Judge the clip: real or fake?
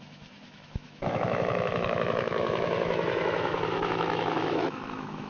fake